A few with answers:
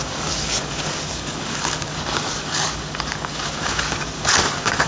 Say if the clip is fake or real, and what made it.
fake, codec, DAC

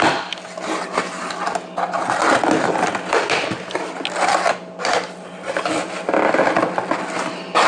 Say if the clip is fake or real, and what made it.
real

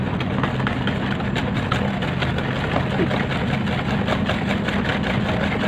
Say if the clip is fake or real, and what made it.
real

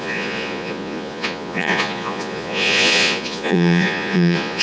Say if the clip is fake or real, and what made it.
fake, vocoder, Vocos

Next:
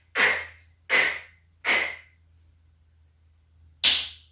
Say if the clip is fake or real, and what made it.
real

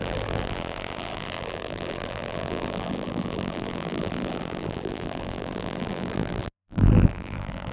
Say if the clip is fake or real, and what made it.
fake, vocoder, BigVGAN v2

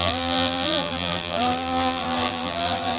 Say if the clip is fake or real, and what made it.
fake, vocoder, BigVGAN v2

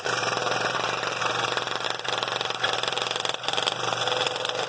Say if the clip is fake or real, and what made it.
real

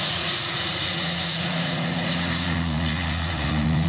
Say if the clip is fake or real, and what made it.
fake, vocoder, Vocos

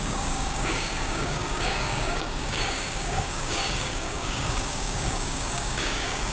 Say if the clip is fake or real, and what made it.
fake, codec, DAC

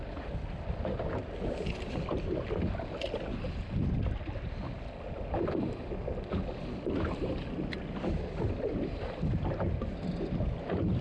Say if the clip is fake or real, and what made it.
real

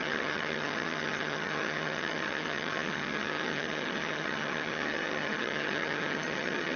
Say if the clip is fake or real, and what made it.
fake, vocoder, HiFi-GAN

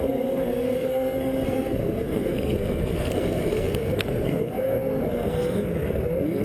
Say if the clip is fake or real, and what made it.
fake, codec, SNAC